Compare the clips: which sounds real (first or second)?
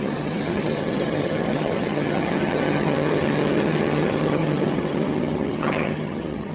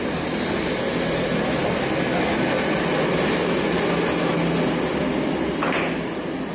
second